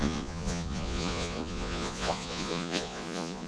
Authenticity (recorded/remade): remade